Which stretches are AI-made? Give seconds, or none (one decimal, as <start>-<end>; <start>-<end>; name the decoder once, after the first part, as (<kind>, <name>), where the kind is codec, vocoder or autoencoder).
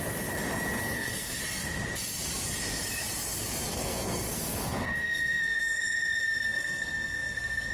0.8-1.4 (codec, SNAC); 3.7-5.8; 6.2-7.7